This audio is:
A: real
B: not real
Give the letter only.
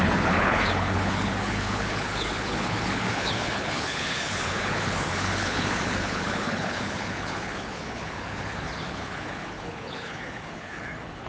B